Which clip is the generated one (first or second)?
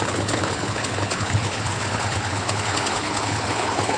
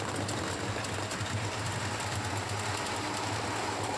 first